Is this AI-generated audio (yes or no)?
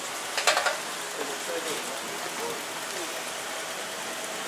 no